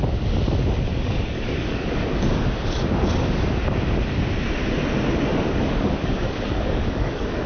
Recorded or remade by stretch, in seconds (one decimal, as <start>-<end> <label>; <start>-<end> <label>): 0.0-0.9 recorded; 0.9-2.9 remade; 2.9-5.3 recorded; 5.3-7.5 remade